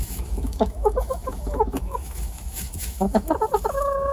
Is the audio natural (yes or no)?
no